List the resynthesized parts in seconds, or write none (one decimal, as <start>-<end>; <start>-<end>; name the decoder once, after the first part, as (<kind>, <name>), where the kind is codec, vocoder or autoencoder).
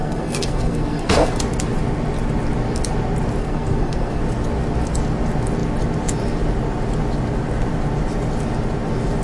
0.0-1.4 (codec, SNAC); 3.4-4.2